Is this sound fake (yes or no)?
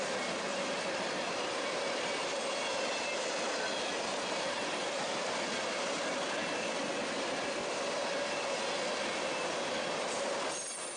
no